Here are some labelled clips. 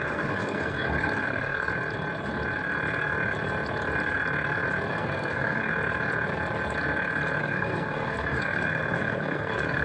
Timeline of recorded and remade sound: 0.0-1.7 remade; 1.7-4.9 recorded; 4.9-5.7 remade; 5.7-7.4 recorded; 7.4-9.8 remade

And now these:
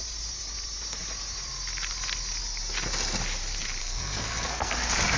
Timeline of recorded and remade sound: 0.0-3.8 recorded; 3.8-4.7 remade; 4.7-5.2 recorded

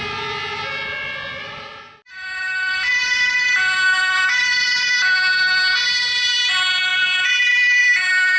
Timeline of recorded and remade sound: 0.0-6.9 recorded; 6.9-7.8 remade; 7.8-8.4 recorded

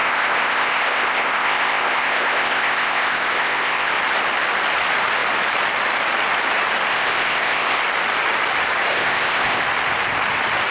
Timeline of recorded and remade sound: 0.0-3.9 remade; 3.9-6.9 recorded; 6.9-7.8 remade; 7.8-8.9 recorded; 8.9-9.6 remade; 9.6-10.7 recorded

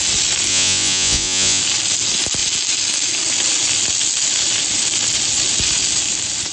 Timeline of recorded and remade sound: 0.0-0.5 recorded; 0.5-1.6 remade; 1.6-6.5 recorded